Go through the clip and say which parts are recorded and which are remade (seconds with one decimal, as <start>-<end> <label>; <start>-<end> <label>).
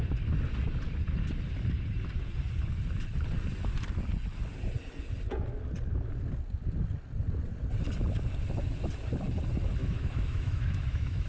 0.0-9.8 recorded; 9.8-11.3 remade